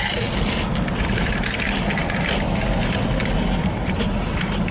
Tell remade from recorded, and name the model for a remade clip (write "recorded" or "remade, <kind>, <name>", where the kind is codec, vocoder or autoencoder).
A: recorded